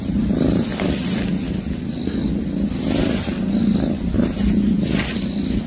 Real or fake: real